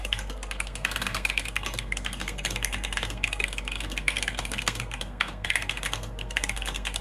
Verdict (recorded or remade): remade